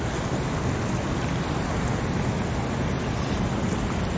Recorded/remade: recorded